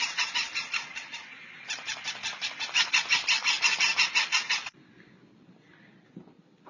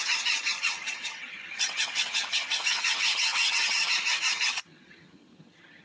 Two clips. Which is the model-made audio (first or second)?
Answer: second